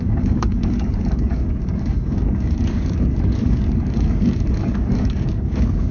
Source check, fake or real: fake